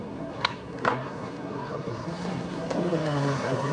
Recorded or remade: remade